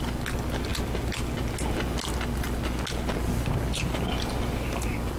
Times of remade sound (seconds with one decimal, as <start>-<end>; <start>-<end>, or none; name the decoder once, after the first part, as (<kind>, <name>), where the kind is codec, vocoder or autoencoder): none